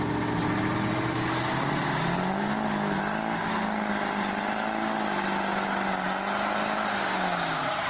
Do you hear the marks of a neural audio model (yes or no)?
no